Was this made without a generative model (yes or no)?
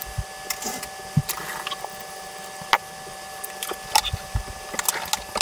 yes